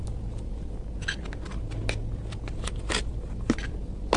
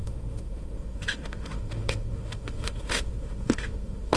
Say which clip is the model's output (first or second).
second